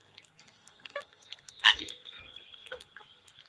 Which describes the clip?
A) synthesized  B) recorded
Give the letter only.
A